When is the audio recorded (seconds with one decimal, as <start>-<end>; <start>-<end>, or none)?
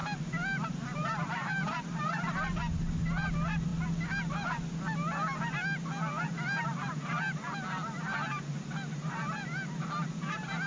2.6-6.6; 7.1-10.7